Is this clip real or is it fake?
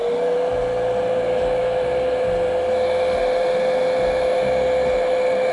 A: real